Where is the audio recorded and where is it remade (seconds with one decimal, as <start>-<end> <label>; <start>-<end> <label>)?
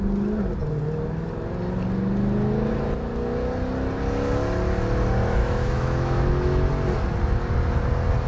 0.0-5.4 recorded; 5.4-6.7 remade; 6.7-8.3 recorded